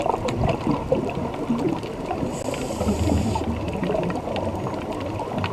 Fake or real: real